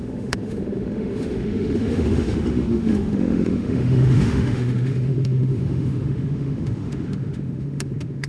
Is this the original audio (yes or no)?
no